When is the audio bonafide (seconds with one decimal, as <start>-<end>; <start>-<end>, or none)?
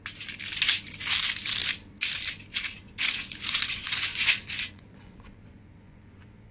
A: 0.0-2.5